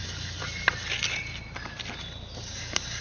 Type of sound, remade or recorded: recorded